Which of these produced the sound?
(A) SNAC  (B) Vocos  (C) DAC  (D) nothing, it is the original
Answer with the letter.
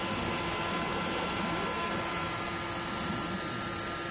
D